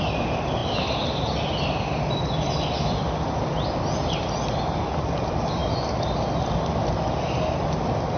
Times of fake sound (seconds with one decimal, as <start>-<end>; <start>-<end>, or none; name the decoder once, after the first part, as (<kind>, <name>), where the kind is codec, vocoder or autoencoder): none

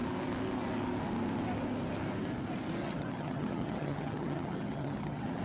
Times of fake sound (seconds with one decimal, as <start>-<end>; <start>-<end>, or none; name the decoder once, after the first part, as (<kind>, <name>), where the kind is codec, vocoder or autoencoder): 2.8-5.4 (vocoder, HiFi-GAN)

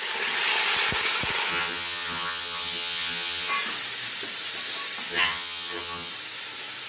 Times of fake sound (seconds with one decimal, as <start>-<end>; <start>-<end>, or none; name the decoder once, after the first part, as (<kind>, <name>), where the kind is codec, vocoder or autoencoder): 1.5-3.5 (vocoder, HiFi-GAN); 5.1-6.1

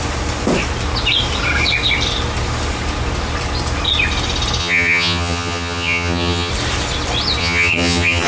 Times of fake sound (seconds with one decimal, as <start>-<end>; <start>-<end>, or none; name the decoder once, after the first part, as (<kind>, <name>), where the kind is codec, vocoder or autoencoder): 4.6-6.5 (vocoder, HiFi-GAN); 7.4-8.3